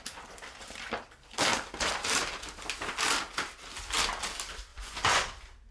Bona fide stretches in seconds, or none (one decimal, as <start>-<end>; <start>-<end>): 0.0-4.7; 5.3-5.7